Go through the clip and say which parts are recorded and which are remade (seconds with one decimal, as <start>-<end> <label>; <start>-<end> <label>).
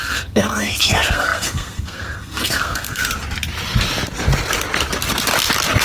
0.0-3.0 remade; 3.0-5.8 recorded